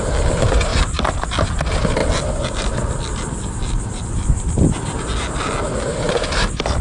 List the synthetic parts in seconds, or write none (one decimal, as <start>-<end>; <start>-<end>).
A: none